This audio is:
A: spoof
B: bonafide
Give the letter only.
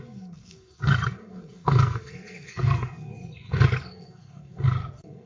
A